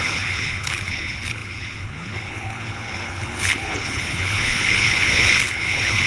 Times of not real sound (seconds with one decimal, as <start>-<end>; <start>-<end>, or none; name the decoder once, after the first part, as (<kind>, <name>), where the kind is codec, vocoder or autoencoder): 0.0-6.1 (codec, HILCodec)